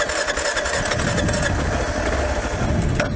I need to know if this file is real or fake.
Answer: real